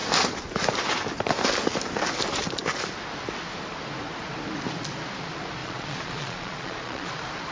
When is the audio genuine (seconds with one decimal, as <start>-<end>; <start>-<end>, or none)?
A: 0.0-5.6; 7.1-7.5